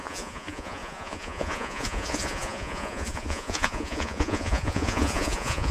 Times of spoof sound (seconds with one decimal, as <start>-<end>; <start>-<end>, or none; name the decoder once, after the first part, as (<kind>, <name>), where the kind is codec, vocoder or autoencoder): 0.0-5.7 (vocoder, Vocos)